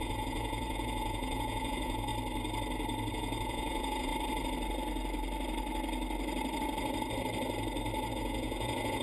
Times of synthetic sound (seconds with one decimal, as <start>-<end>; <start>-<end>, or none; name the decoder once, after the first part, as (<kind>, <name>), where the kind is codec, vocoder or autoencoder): 0.0-2.1 (vocoder, Vocos); 3.1-4.1; 8.1-9.0